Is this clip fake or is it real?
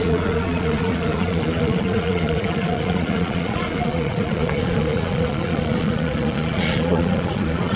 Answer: fake